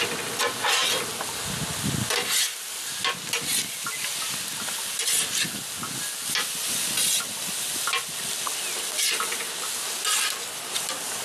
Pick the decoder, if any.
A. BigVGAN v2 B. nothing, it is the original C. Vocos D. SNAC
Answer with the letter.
B